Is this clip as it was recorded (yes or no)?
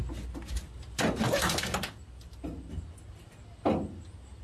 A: yes